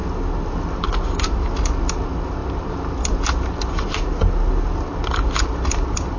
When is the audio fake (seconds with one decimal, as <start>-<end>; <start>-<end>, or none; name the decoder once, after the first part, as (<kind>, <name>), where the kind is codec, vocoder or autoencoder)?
none